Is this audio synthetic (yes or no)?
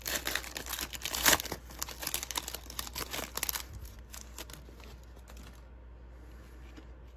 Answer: no